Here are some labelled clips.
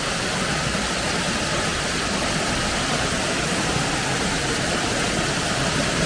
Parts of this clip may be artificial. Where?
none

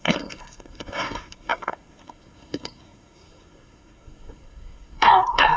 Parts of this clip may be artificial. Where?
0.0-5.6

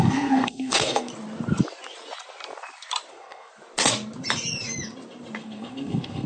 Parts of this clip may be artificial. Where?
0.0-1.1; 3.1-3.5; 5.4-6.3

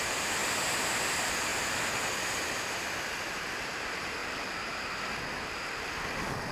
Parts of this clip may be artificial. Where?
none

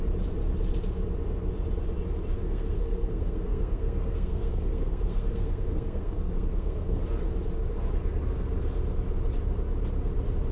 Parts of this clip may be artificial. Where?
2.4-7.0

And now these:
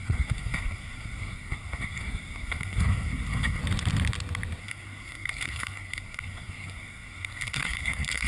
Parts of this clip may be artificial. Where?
0.0-3.6; 4.6-8.3